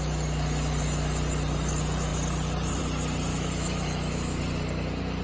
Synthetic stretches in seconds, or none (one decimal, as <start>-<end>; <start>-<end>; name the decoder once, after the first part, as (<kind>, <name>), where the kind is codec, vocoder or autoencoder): 3.3-4.4 (autoencoder, DAC-VAE)